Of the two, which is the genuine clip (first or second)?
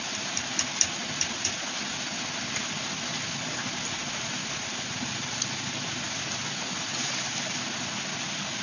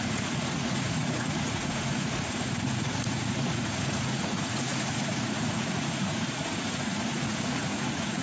first